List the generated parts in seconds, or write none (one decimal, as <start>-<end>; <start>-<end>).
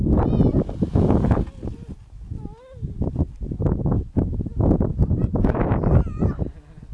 5.3-6.2